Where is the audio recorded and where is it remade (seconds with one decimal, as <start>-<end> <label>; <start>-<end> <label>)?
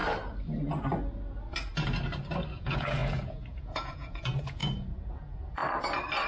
0.0-2.5 recorded; 2.5-5.6 remade; 5.6-6.3 recorded